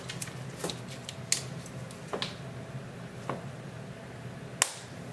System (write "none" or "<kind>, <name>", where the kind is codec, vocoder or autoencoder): none